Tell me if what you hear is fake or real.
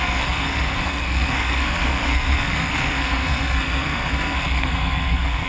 fake